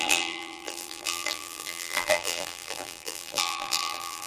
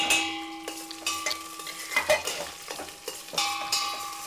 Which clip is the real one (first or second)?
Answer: second